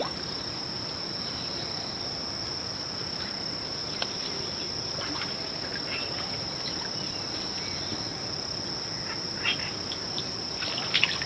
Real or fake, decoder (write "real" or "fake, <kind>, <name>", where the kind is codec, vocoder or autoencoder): real